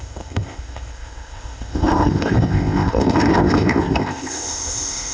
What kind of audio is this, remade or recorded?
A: remade